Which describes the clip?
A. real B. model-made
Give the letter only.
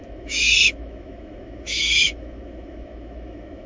B